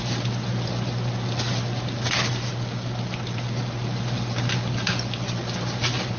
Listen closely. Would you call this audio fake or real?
real